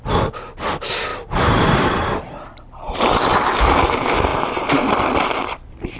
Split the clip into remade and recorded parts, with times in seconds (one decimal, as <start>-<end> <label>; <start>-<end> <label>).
0.0-1.1 recorded; 1.1-3.0 remade; 3.0-4.3 recorded; 4.3-4.9 remade; 4.9-6.0 recorded